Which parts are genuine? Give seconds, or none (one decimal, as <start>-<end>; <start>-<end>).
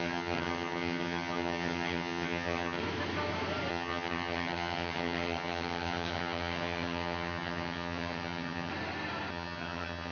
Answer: 2.8-3.7; 8.7-9.3